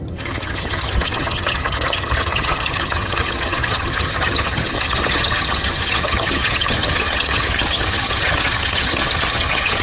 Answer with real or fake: fake